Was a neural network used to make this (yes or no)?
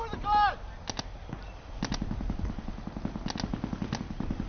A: no